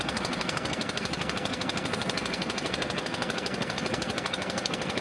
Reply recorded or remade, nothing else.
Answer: remade